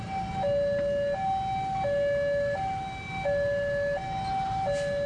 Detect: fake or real real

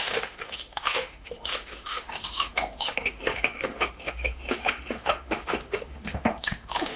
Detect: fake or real fake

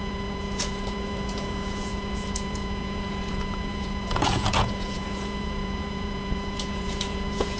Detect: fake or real fake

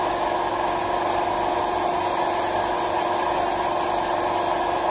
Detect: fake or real real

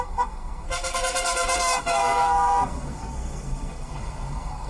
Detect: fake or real fake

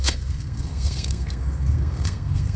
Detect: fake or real fake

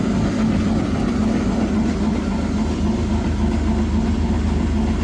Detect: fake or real real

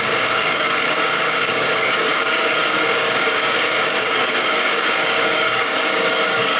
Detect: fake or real fake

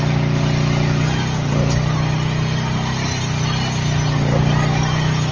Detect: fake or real real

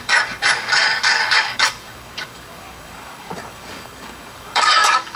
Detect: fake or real fake